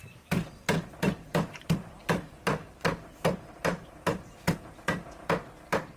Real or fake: fake